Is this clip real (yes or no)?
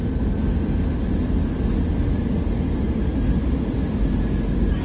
yes